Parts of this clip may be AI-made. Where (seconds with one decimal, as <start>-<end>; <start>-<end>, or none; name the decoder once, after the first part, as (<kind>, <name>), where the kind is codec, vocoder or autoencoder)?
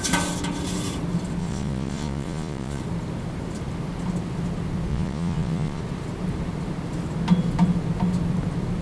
1.4-2.8 (vocoder, Vocos); 4.9-5.8